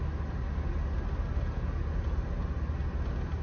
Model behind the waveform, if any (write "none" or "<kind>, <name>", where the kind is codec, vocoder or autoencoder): none